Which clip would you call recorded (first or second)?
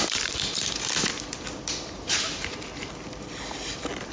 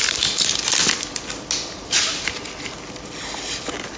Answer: second